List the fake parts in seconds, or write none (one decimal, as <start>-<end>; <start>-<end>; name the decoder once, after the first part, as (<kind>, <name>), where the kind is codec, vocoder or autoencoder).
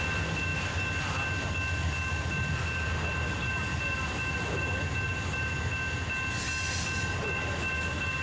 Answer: none